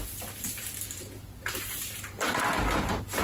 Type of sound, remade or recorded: recorded